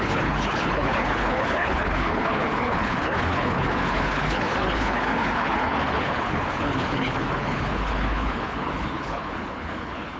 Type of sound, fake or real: fake